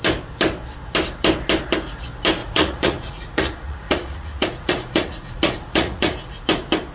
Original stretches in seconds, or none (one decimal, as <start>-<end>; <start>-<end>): 0.0-2.4; 6.4-6.9